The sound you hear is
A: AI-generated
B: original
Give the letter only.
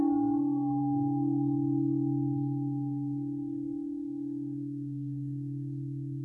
A